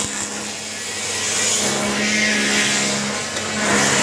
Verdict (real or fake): real